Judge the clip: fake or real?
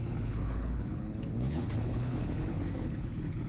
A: fake